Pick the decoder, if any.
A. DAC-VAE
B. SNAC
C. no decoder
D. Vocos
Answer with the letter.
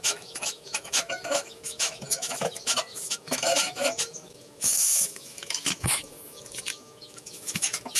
A